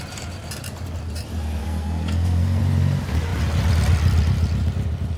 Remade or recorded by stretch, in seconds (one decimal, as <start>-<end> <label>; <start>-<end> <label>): 0.0-1.6 recorded; 1.6-2.6 remade; 2.6-5.2 recorded